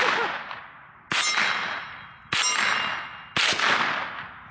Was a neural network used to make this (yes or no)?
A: no